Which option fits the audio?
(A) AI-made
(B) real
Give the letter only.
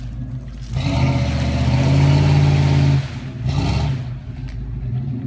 B